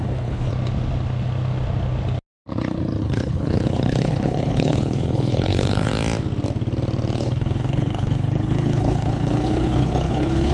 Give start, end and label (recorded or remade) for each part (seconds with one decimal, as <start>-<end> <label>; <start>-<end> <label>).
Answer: 0.0-0.5 remade; 0.5-3.0 recorded; 3.0-5.9 remade; 5.9-7.2 recorded; 7.2-10.5 remade